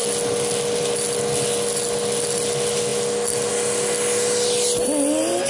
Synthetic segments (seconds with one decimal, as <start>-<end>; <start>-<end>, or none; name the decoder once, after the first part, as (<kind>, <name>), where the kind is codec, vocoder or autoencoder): none